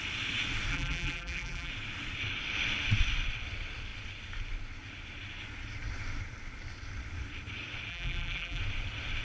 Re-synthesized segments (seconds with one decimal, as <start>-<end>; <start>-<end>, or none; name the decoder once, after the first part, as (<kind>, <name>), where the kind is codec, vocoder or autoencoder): 0.7-1.7 (vocoder, BigVGAN v2); 7.9-8.6